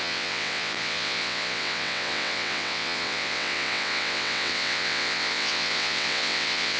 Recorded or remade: remade